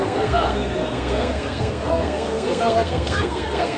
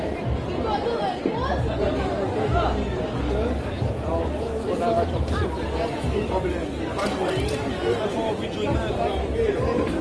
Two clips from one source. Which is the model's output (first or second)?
first